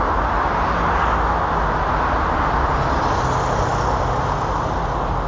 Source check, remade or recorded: recorded